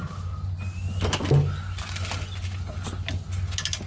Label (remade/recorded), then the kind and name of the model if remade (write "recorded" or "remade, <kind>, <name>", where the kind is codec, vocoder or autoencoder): recorded